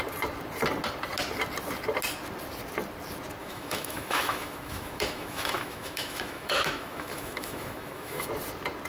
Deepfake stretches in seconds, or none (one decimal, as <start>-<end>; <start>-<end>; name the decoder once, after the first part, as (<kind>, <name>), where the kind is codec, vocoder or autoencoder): 3.4-8.3 (autoencoder, DAC-VAE)